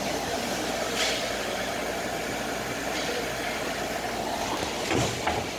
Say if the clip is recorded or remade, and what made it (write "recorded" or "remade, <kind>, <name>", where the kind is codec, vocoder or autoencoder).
recorded